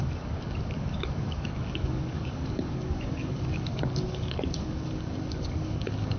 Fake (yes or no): yes